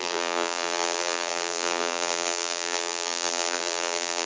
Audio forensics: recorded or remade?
remade